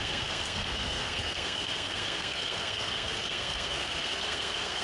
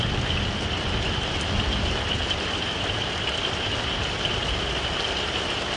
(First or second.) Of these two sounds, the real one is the second